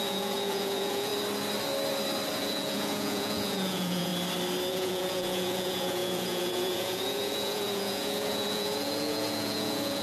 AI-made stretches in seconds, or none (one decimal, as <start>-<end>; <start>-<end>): 0.0-1.1; 2.4-4.1; 4.7-10.0